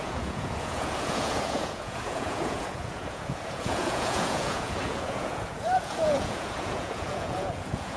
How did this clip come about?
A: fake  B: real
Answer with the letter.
A